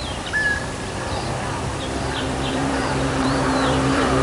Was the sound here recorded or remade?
remade